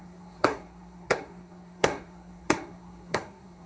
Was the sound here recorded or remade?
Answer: remade